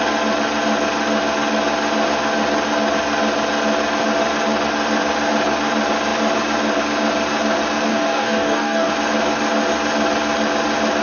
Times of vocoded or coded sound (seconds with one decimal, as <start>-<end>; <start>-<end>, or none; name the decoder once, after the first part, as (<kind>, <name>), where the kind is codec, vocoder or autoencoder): 7.9-8.9 (codec, DAC)